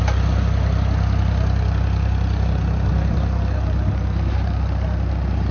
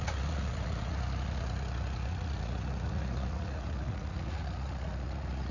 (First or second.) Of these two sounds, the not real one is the second